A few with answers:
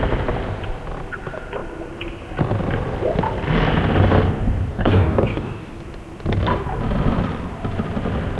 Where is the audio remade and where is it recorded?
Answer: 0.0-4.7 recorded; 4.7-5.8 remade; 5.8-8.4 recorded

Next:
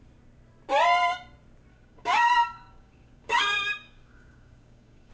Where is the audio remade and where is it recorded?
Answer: 0.0-1.7 recorded; 1.7-5.1 remade

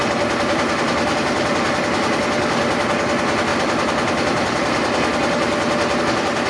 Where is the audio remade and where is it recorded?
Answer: 0.0-6.5 recorded

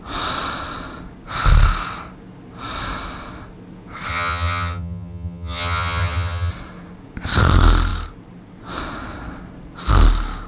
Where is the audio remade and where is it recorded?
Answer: 0.0-4.1 recorded; 4.1-6.5 remade; 6.5-10.5 recorded

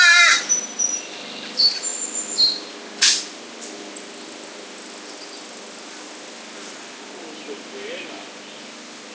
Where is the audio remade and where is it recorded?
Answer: 0.0-9.1 recorded

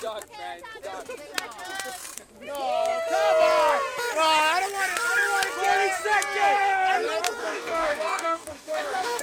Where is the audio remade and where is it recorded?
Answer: 0.0-7.4 recorded; 7.4-9.2 remade